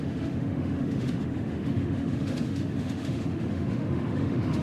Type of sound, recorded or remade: remade